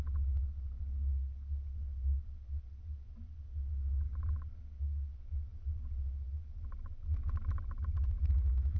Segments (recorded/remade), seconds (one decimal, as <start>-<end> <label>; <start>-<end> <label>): 0.0-5.5 recorded; 5.5-8.3 remade; 8.3-8.8 recorded